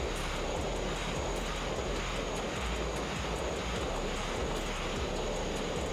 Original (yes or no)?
yes